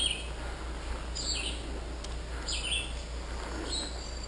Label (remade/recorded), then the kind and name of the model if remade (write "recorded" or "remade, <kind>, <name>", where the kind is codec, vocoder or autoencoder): recorded